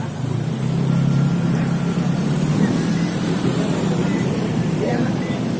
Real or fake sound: fake